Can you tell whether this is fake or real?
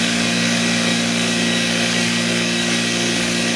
fake